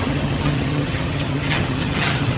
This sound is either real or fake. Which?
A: fake